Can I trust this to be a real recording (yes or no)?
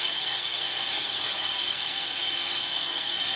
no